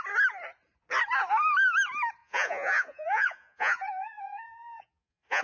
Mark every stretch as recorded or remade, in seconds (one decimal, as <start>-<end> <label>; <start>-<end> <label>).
0.0-2.2 recorded; 2.2-5.4 remade